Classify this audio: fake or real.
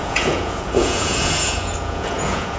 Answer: fake